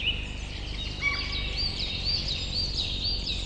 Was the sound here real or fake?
real